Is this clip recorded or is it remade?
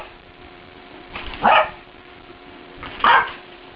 remade